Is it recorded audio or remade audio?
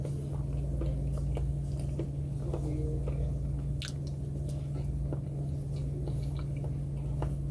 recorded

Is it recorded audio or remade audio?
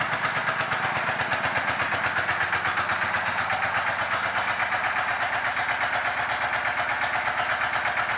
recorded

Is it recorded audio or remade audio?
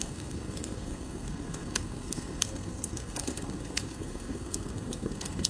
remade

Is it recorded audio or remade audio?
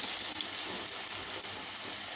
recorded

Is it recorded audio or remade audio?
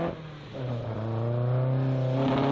recorded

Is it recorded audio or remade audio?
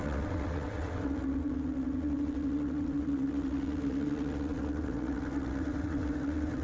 remade